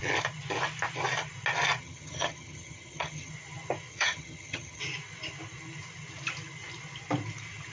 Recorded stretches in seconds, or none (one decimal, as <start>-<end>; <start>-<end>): 0.0-1.8; 3.3-3.9; 4.8-7.7